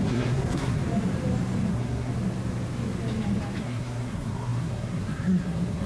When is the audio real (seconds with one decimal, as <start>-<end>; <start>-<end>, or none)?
0.8-1.7; 2.1-3.6